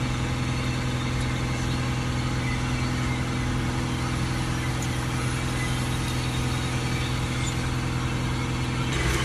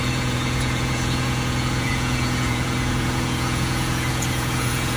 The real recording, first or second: first